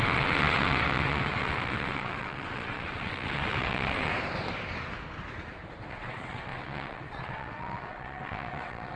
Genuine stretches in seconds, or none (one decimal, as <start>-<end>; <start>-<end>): 4.1-5.9